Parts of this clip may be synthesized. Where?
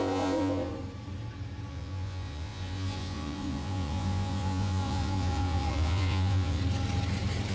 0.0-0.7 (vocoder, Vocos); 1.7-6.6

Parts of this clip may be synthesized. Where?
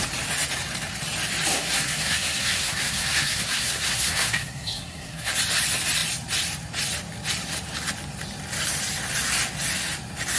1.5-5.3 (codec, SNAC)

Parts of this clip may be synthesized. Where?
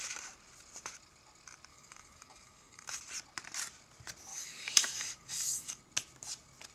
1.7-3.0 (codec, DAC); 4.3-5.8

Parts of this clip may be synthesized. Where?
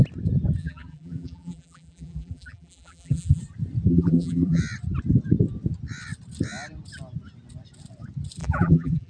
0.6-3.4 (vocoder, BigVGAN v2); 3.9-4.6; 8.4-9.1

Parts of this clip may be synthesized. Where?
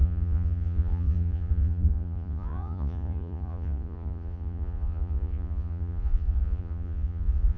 0.0-7.6 (vocoder, Vocos)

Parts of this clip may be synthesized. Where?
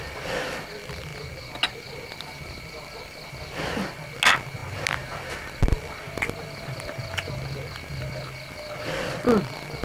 none